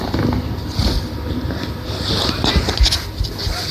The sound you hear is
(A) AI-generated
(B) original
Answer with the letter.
B